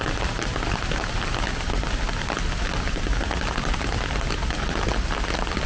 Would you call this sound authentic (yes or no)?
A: yes